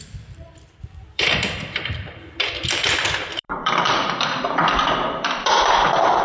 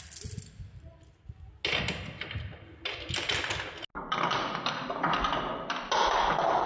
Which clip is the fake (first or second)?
first